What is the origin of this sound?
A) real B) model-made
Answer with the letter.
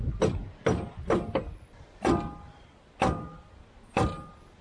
A